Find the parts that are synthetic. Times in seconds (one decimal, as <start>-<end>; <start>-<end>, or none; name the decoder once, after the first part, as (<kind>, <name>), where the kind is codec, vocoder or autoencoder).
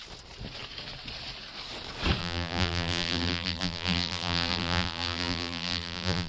2.2-6.3 (vocoder, BigVGAN v2)